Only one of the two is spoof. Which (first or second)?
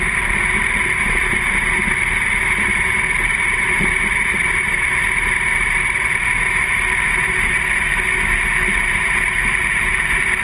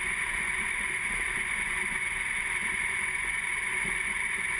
second